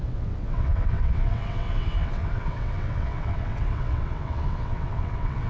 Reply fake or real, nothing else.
fake